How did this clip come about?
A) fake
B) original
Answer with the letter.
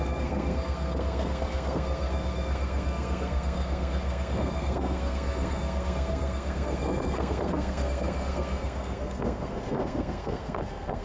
A